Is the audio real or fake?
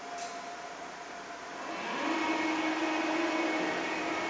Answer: real